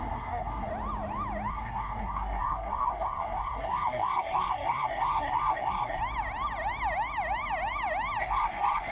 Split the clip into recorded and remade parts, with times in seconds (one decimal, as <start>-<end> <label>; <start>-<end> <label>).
0.0-0.7 remade; 0.7-1.5 recorded; 1.5-6.0 remade; 6.0-8.2 recorded; 8.2-8.9 remade